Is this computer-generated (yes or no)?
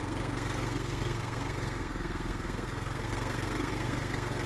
yes